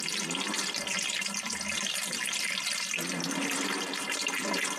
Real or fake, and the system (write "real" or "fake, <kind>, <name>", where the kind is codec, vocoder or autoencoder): real